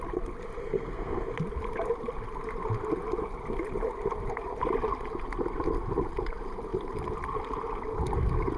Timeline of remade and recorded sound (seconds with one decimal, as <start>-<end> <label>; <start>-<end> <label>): 0.0-0.6 recorded; 0.6-1.3 remade; 1.3-8.6 recorded